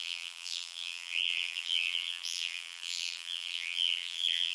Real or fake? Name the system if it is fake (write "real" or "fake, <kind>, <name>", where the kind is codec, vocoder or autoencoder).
fake, vocoder, BigVGAN v2